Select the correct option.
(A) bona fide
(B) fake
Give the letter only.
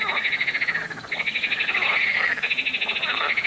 A